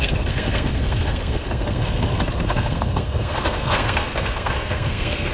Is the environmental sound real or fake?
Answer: fake